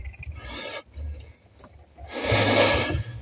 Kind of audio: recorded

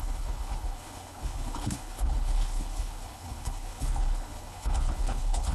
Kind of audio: remade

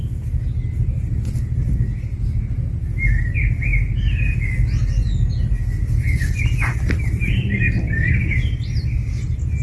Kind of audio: recorded